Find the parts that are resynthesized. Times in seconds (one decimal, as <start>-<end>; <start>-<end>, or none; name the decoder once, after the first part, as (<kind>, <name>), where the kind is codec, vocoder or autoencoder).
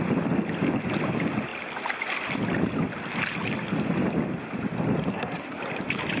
5.1-5.6 (codec, SNAC)